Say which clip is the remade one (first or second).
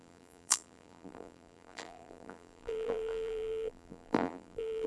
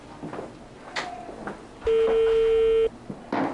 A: first